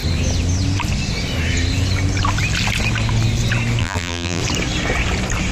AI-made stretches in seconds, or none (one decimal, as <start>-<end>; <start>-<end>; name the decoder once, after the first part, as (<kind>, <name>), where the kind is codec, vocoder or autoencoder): 3.8-4.4 (vocoder, BigVGAN v2)